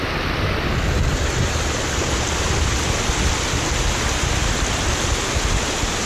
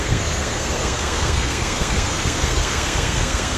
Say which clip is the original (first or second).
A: first